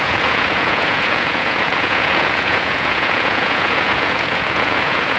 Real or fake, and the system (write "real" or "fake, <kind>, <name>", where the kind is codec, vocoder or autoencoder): fake, vocoder, Vocos